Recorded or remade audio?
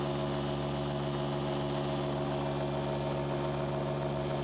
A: recorded